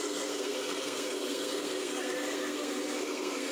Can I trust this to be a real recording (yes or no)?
no